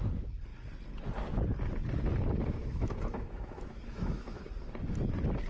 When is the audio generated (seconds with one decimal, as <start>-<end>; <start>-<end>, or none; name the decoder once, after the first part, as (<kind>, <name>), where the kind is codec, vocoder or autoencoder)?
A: 2.6-4.5 (autoencoder, DAC-VAE)